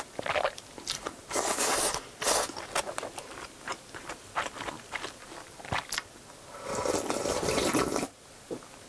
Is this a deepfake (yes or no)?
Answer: no